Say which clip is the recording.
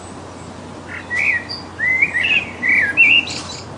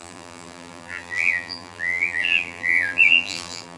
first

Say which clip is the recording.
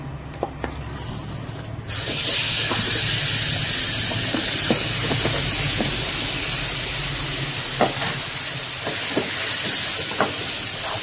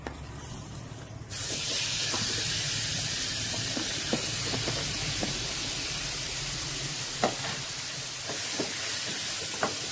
first